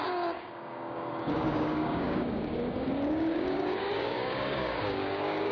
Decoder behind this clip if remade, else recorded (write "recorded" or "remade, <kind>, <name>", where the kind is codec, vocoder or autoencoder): remade, codec, DAC